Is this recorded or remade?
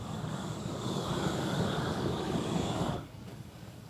remade